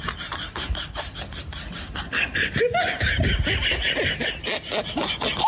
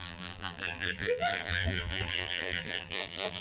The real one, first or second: first